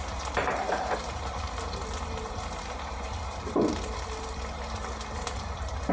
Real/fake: fake